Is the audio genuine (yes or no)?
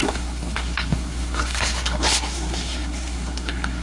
no